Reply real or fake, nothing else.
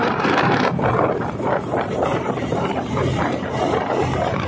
fake